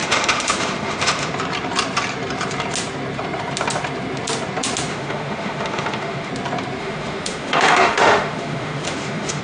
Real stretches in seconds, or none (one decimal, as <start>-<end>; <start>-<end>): 1.3-4.9; 6.3-6.8